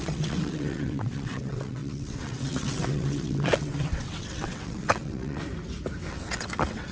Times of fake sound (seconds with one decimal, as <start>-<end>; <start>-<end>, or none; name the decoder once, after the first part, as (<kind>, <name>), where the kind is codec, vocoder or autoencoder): 0.0-5.4 (vocoder, WaveNeXt); 6.1-6.9